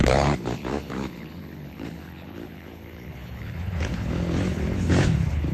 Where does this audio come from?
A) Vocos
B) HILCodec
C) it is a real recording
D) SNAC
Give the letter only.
B